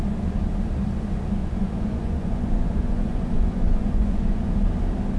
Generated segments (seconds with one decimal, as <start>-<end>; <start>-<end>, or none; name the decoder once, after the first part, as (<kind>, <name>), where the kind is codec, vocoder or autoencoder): 1.4-4.5 (vocoder, Vocos)